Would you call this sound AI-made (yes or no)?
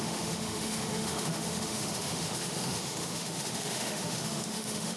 yes